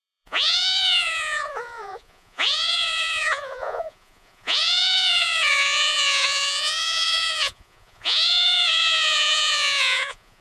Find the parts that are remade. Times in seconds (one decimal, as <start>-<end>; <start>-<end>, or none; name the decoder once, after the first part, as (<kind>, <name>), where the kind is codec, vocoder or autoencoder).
0.0-10.4 (vocoder, Vocos)